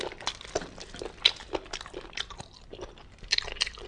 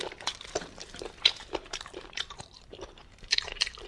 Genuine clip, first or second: first